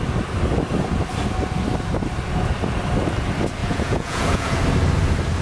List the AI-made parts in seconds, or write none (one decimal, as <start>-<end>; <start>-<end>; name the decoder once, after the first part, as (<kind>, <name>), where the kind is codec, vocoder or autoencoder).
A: 3.6-4.6 (vocoder, Vocos)